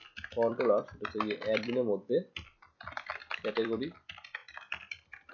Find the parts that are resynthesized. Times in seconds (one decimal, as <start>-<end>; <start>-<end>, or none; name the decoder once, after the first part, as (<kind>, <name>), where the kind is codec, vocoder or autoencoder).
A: 0.0-5.3 (vocoder, BigVGAN v2)